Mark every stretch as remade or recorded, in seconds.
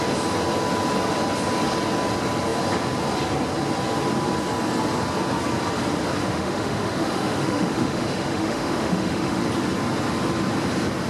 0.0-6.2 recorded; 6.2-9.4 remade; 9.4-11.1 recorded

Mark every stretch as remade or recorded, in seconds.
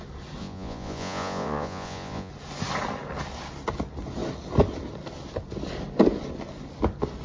0.0-0.4 recorded; 0.4-2.3 remade; 2.3-7.2 recorded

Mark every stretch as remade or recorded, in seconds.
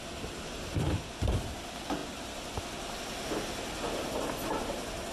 0.0-5.1 recorded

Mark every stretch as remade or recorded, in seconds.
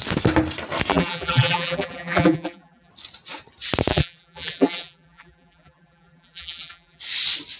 0.0-0.9 recorded; 0.9-2.9 remade; 2.9-3.9 recorded; 3.9-7.0 remade; 7.0-7.6 recorded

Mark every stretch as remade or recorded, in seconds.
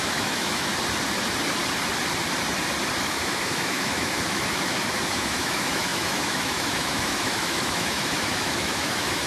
0.0-0.7 remade; 0.7-3.0 recorded; 3.0-9.3 remade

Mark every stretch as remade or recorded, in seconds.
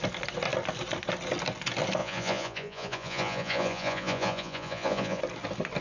0.0-2.0 recorded; 2.0-5.2 remade; 5.2-5.8 recorded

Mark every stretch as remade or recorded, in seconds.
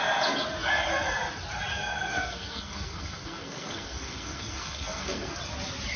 0.0-1.7 recorded; 1.7-5.3 remade; 5.3-6.0 recorded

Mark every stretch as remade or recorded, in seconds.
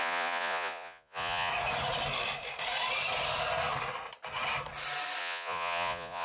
0.0-1.5 remade; 1.5-5.2 recorded; 5.2-6.2 remade